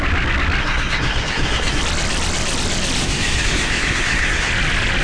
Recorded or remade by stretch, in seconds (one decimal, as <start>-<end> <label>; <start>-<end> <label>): 0.0-0.6 recorded; 0.6-1.8 remade; 1.8-3.0 recorded; 3.0-4.5 remade; 4.5-5.0 recorded